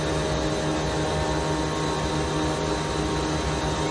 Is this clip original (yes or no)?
yes